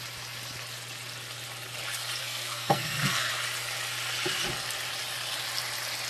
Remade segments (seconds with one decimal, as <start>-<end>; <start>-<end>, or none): 2.2-3.3

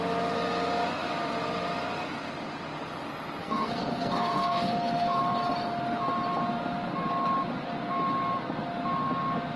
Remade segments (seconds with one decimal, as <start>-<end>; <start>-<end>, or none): 3.4-5.2

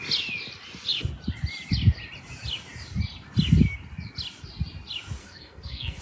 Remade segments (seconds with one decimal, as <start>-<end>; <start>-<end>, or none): 5.2-6.0

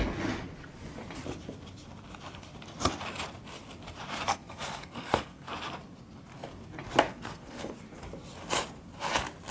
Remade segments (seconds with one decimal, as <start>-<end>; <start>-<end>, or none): 4.3-5.5; 7.1-7.7

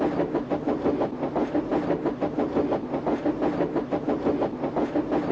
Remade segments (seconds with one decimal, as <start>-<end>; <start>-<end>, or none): none

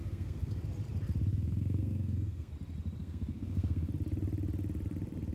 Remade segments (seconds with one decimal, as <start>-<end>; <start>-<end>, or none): 0.0-0.6; 1.3-2.5; 3.0-3.9

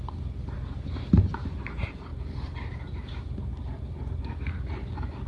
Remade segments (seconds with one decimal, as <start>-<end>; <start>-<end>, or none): none

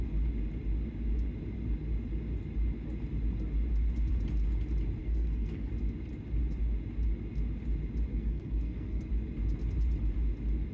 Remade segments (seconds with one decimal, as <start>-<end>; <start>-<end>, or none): 5.0-5.7; 8.1-9.1